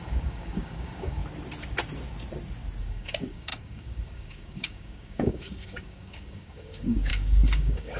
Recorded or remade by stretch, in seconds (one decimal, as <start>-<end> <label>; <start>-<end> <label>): 0.0-1.2 remade; 1.2-2.8 recorded; 2.8-8.0 remade